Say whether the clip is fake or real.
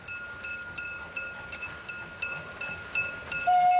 real